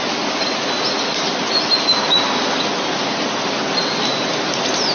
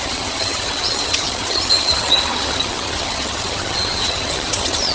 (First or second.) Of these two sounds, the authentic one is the first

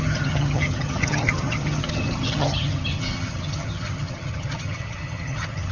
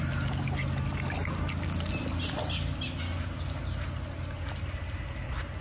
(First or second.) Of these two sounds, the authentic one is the second